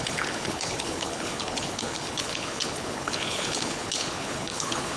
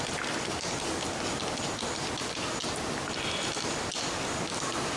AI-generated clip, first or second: first